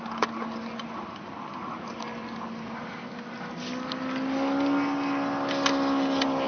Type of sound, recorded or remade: recorded